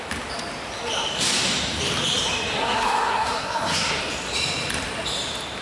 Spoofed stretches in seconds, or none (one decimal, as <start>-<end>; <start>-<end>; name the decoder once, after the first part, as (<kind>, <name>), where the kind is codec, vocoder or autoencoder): 2.6-4.0 (codec, SNAC)